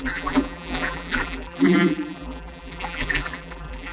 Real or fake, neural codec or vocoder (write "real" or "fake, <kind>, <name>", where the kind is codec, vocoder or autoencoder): fake, vocoder, BigVGAN v2